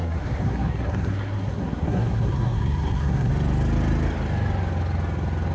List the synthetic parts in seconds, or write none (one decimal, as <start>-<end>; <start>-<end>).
0.0-3.3